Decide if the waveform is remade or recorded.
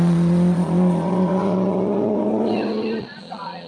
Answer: remade